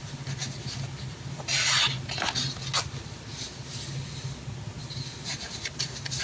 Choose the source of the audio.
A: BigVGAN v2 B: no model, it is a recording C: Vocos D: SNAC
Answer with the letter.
B